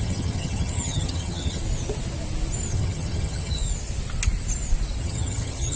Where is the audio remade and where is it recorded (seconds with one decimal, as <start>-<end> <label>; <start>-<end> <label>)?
0.0-1.6 remade; 1.6-2.7 recorded; 2.7-3.6 remade; 3.6-5.0 recorded; 5.0-5.8 remade